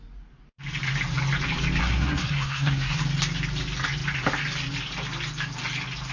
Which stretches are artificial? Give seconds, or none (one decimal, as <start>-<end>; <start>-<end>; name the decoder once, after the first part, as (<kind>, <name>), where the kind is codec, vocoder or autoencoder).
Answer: 1.8-3.0 (codec, SNAC)